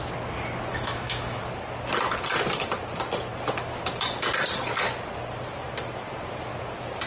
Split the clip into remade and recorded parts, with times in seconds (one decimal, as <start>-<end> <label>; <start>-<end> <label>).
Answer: 0.0-0.7 recorded; 0.7-1.4 remade; 1.4-7.1 recorded